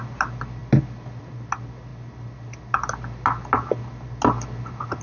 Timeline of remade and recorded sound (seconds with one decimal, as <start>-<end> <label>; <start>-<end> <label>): 0.0-5.0 recorded